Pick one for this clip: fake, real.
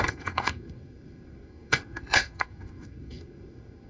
fake